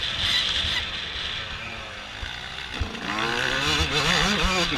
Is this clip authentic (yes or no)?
yes